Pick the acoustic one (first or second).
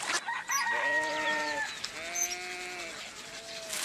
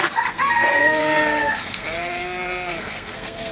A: first